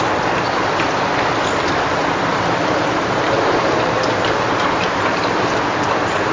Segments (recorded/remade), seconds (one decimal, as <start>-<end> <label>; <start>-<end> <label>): 0.0-2.3 recorded; 2.3-6.3 remade